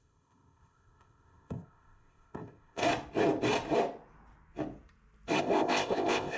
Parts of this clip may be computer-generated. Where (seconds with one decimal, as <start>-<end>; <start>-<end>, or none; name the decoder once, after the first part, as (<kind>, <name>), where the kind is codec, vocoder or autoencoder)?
0.0-2.8 (codec, ZipCodec); 5.4-6.4